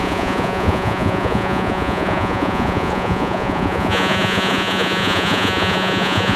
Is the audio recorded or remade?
remade